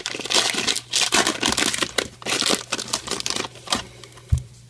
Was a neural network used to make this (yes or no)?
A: no